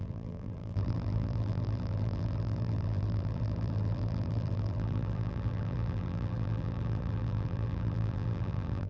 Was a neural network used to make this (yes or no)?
yes